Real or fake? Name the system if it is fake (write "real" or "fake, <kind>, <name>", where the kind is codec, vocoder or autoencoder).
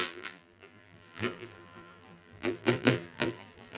fake, vocoder, BigVGAN v2